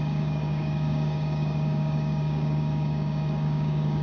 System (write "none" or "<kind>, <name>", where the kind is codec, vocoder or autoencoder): codec, DAC